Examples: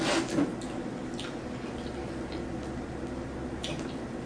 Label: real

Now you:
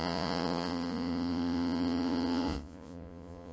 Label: fake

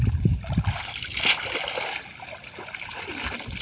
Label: real